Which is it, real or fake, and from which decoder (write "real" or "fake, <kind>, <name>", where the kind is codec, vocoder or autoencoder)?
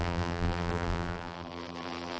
fake, vocoder, BigVGAN v2